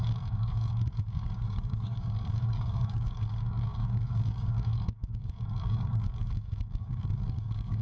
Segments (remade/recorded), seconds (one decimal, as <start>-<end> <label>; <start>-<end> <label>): 0.0-7.8 remade